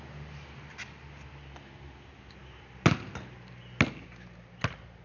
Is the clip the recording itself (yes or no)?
yes